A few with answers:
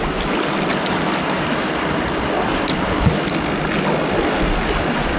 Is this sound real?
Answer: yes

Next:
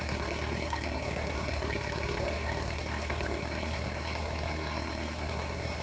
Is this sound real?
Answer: no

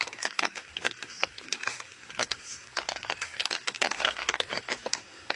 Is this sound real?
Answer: no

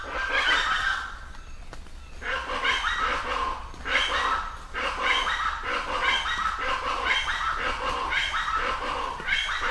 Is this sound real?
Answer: yes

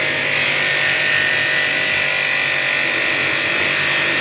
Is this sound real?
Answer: yes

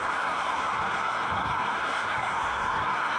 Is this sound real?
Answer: no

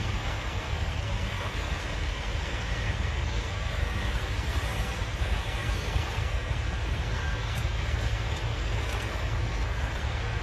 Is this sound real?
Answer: no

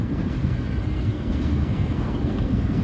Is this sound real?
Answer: no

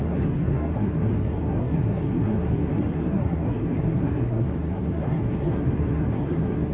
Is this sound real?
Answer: no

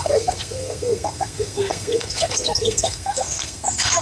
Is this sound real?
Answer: no